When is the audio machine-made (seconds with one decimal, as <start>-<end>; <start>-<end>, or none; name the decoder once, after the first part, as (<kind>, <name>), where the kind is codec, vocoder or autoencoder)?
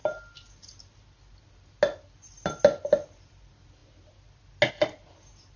none